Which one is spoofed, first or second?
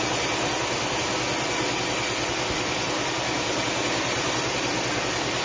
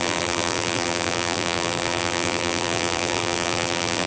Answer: second